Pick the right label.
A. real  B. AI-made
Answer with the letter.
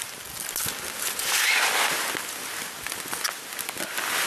A